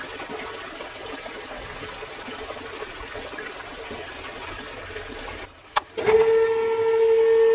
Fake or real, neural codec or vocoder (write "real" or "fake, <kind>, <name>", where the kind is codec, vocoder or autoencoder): real